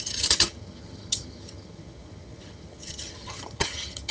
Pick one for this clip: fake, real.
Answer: fake